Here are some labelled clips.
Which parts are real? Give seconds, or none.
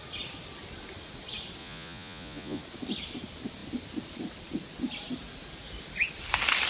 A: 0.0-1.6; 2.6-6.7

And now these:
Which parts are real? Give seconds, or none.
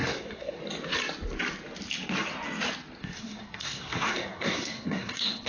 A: 0.6-3.0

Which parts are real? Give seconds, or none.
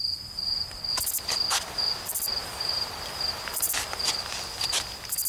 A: 0.0-2.4; 3.7-5.3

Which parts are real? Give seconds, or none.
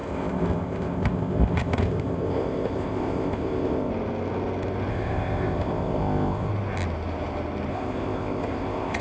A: 3.9-4.9; 6.5-7.7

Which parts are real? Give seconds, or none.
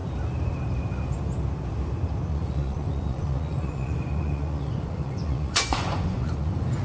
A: 0.0-2.3